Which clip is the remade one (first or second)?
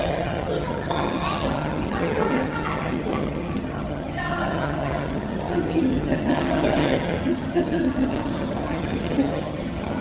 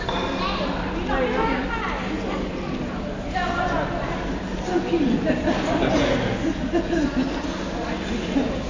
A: first